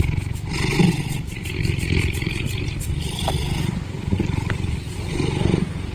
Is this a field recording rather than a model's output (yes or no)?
yes